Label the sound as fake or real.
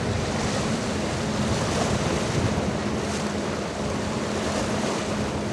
real